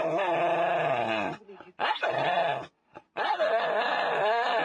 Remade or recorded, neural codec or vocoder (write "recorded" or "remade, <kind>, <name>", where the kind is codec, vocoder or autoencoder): recorded